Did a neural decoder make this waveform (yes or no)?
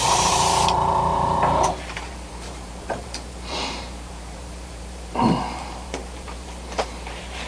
yes